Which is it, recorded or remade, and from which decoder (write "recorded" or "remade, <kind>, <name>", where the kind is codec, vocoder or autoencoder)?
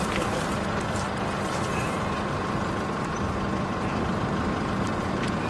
remade, vocoder, BigVGAN v2